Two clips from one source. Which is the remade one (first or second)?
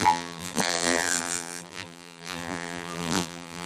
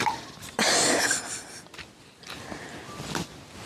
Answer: first